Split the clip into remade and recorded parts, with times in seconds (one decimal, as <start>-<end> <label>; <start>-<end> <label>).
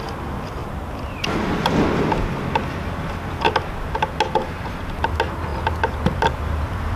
0.0-7.0 recorded